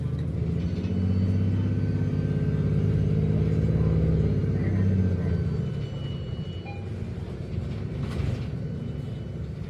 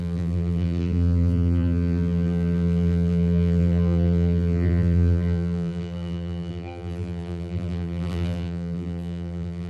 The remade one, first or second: second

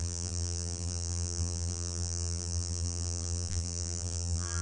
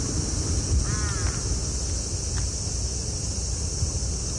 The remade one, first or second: first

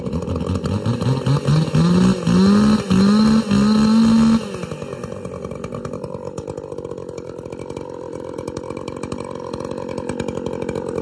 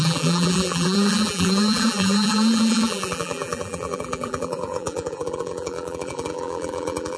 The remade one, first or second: second